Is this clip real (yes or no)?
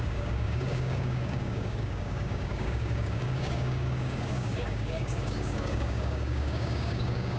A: no